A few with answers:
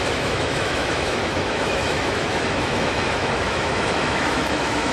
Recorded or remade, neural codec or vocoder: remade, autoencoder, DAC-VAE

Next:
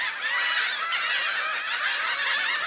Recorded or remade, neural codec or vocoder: recorded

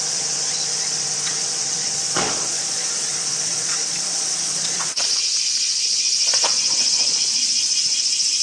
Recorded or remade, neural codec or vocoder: remade, vocoder, Vocos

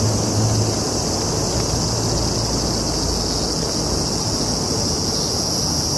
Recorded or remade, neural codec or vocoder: recorded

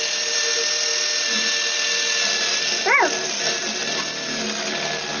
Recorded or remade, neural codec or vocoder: recorded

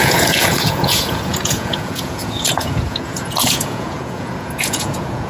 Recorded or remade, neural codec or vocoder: remade, vocoder, Vocos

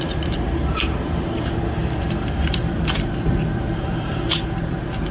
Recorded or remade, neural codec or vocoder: remade, vocoder, BigVGAN v2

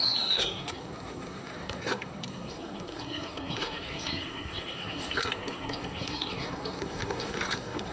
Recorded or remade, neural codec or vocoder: remade, codec, SNAC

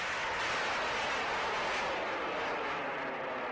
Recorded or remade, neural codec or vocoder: recorded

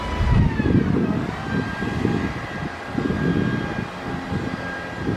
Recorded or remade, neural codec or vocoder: recorded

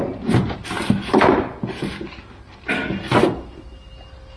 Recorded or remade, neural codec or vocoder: recorded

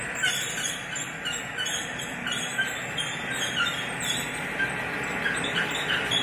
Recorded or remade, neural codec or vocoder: recorded